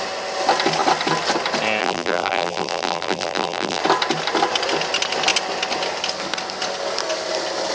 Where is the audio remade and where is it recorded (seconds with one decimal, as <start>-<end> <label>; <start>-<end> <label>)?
0.0-1.8 recorded; 1.8-3.8 remade; 3.8-7.7 recorded